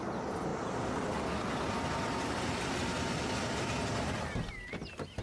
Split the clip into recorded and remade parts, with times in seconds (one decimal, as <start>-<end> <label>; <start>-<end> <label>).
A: 0.0-5.2 recorded